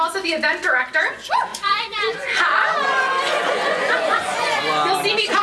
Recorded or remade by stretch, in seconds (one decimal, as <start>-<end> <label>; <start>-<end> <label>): 0.0-1.5 recorded; 1.5-4.7 remade; 4.7-5.4 recorded